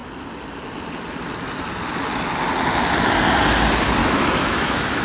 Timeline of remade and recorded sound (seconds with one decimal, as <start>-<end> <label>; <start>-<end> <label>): 0.0-4.0 recorded; 4.0-5.0 remade